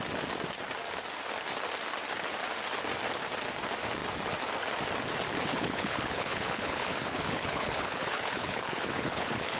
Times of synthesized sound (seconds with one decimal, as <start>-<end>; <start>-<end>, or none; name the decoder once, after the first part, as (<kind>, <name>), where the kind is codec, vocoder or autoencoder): 5.5-9.6 (codec, HILCodec)